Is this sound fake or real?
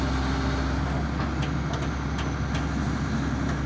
real